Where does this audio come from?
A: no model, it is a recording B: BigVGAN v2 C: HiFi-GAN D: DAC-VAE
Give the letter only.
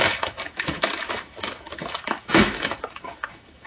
D